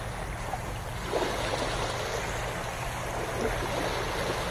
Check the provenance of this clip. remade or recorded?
recorded